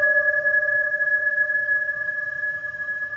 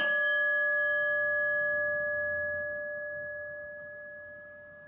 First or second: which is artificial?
first